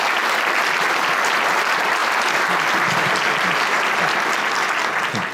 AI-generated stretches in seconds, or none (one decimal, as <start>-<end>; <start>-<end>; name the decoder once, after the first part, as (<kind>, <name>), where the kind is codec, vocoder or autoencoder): none